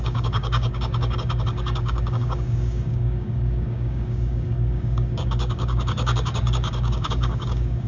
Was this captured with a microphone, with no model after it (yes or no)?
no